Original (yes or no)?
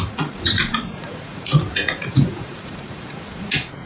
no